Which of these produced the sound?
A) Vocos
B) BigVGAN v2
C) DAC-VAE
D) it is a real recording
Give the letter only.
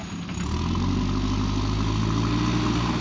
D